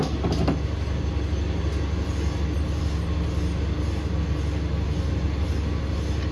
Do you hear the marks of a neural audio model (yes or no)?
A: no